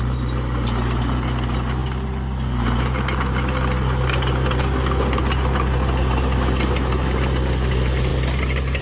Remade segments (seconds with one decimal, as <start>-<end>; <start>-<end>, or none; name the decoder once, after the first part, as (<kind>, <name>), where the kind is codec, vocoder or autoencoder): none